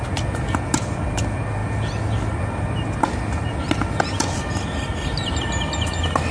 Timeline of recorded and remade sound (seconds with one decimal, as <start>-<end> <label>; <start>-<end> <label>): 0.0-6.3 recorded